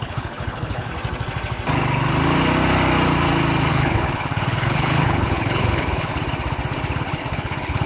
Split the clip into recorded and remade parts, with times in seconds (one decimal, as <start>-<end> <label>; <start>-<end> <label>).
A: 0.0-0.9 remade; 0.9-3.7 recorded; 3.7-6.1 remade; 6.1-7.0 recorded; 7.0-7.9 remade